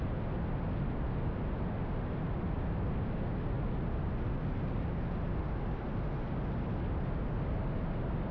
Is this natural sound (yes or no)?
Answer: yes